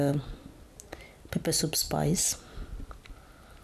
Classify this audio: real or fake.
real